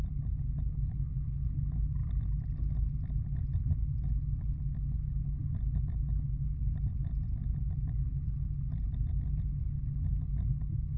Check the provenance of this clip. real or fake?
real